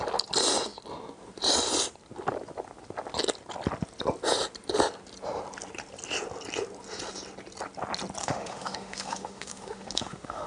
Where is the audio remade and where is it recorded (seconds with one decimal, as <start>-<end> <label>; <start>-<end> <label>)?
0.0-8.2 recorded; 8.2-10.5 remade